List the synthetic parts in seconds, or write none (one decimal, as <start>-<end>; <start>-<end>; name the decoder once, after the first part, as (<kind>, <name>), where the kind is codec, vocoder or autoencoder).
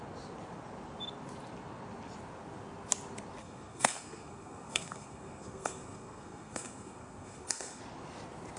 3.4-7.8 (codec, SNAC)